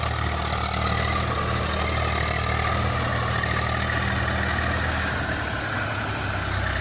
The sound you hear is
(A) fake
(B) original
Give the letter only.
B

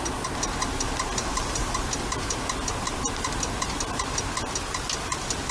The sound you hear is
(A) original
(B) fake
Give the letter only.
A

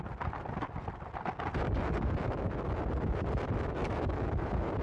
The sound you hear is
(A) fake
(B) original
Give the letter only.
B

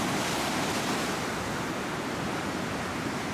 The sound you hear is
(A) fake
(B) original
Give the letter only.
B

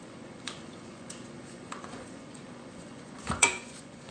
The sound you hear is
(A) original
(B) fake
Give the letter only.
B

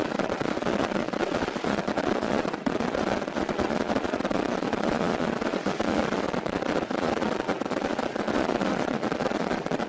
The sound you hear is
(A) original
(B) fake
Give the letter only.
B